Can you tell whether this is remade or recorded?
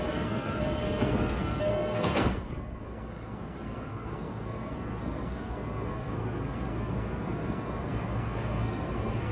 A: remade